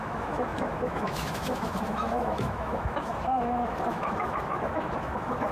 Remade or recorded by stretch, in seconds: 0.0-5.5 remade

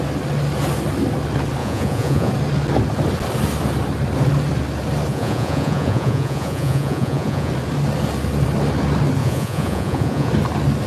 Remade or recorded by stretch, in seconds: 0.0-1.6 recorded; 1.6-2.3 remade; 2.3-5.1 recorded; 5.1-7.5 remade; 7.5-9.2 recorded; 9.2-10.3 remade; 10.3-10.9 recorded

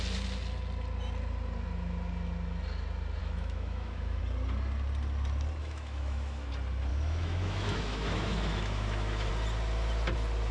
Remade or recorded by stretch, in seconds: 0.0-3.2 recorded; 3.2-4.2 remade; 4.2-5.6 recorded; 5.6-6.5 remade; 6.5-6.9 recorded; 6.9-9.3 remade; 9.3-10.5 recorded